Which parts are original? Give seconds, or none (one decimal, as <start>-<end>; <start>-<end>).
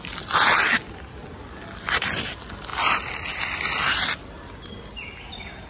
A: 0.0-5.7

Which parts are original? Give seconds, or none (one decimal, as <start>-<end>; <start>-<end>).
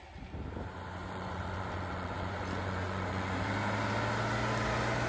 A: 0.0-1.0; 3.4-5.1